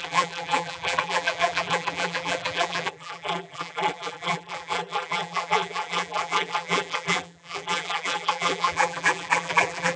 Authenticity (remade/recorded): remade